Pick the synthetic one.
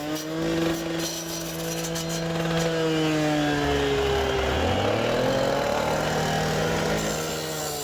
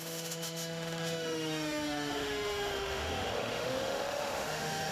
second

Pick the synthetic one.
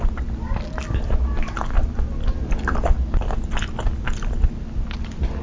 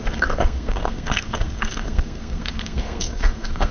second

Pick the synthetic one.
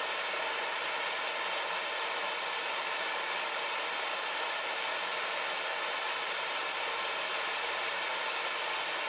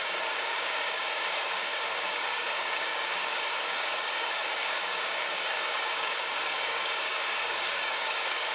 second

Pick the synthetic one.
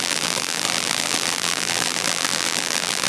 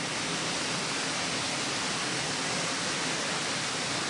first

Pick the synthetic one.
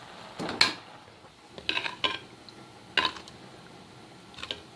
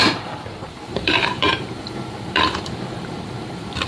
second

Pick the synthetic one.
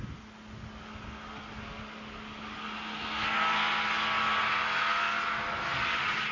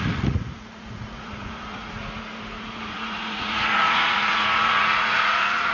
second